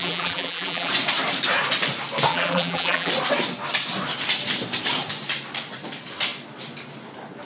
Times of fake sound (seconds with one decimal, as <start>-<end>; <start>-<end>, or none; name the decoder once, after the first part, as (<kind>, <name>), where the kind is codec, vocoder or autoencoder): 0.0-0.9 (vocoder, BigVGAN v2); 2.3-3.1